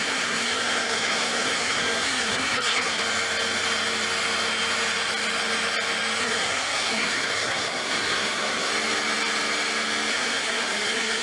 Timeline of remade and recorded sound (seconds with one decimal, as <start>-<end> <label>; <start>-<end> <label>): 0.0-3.0 remade; 3.0-6.2 recorded; 6.2-8.7 remade; 8.7-10.1 recorded; 10.1-11.2 remade